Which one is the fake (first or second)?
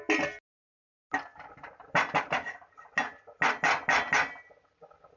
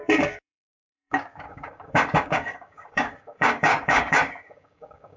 second